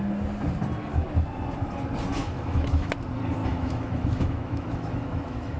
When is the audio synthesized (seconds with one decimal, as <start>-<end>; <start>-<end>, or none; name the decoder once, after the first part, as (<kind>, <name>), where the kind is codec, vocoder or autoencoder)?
2.2-2.9 (autoencoder, DAC-VAE); 3.4-5.6